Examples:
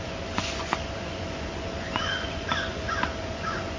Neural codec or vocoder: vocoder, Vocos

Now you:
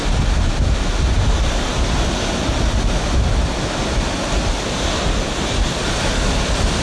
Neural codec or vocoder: none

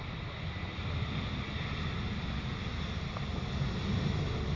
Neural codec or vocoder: none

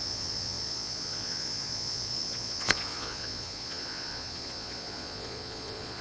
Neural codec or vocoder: vocoder, Vocos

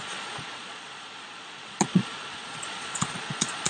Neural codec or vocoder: vocoder, Vocos